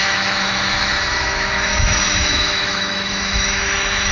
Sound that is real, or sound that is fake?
fake